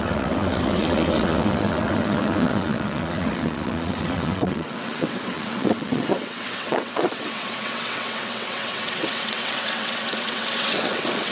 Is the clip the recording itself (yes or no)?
no